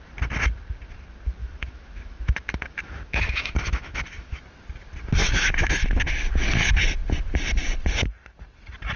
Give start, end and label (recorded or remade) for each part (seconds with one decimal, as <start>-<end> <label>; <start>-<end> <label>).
0.0-1.4 recorded; 1.4-4.4 remade; 4.4-5.2 recorded; 5.2-6.1 remade; 6.1-9.0 recorded